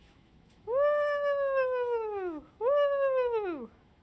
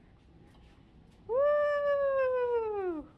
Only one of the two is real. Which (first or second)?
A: second